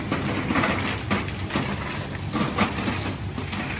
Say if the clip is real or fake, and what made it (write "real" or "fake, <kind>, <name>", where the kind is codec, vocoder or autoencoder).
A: real